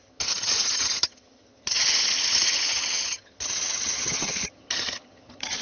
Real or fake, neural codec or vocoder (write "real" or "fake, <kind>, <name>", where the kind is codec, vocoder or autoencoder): fake, vocoder, HiFi-GAN